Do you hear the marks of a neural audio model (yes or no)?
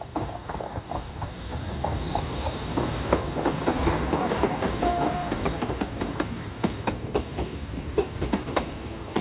yes